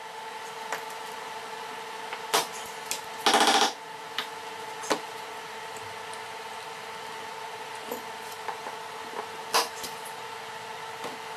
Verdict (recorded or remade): recorded